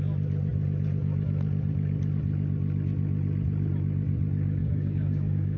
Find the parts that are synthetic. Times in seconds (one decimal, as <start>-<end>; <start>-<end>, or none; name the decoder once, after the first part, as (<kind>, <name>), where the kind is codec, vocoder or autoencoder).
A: 4.6-5.6 (codec, DAC)